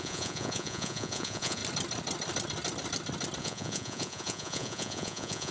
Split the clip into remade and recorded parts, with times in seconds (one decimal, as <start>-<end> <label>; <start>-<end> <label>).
0.0-1.6 remade; 1.6-3.4 recorded; 3.4-5.5 remade